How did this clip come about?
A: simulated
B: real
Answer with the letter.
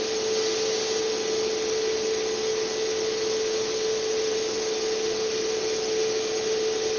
B